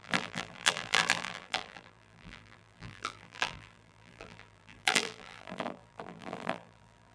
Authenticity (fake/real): fake